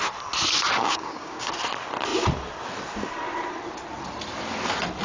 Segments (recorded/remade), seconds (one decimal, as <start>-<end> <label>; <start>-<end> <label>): 0.0-0.8 recorded; 0.8-1.5 remade; 1.5-5.0 recorded